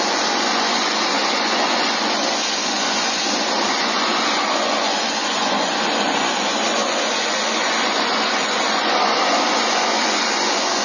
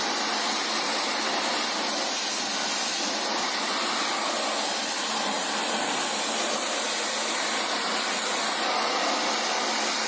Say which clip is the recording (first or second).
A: second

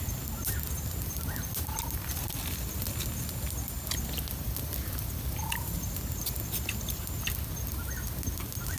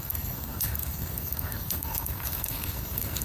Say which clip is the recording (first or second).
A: first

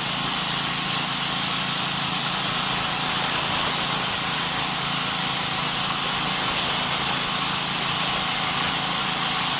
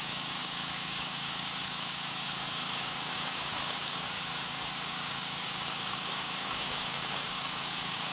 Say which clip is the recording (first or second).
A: first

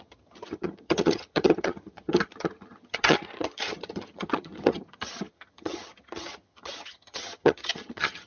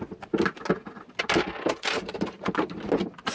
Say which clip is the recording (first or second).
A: second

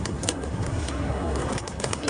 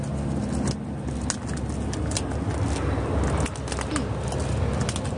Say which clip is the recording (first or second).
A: second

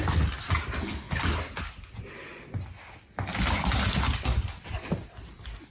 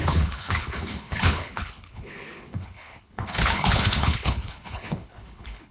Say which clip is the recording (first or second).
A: first